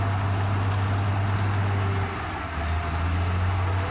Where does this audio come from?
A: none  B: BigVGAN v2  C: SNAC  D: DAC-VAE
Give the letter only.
A